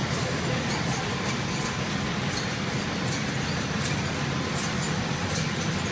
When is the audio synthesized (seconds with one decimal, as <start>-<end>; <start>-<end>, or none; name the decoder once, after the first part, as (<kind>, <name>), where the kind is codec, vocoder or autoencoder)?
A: none